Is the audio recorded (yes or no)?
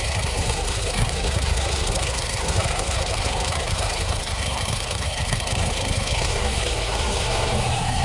no